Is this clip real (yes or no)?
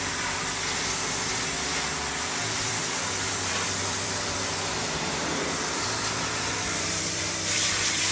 no